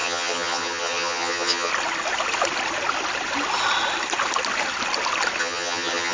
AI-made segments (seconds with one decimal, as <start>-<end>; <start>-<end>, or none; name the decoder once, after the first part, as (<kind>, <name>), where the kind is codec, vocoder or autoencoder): 0.0-1.7 (vocoder, HiFi-GAN); 5.4-6.1